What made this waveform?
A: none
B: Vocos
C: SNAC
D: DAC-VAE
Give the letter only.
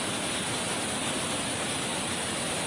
A